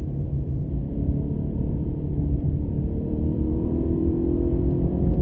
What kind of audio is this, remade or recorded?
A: remade